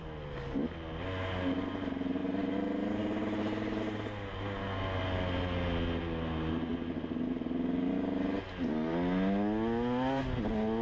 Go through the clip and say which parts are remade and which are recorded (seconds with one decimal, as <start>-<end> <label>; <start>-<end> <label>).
0.0-10.8 recorded